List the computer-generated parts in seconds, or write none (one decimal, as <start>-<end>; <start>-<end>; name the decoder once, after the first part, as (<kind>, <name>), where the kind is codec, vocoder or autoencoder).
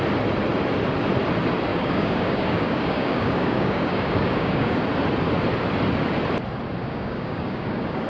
1.7-4.8 (codec, DAC); 6.8-8.1